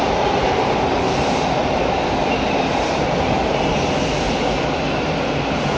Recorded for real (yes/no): yes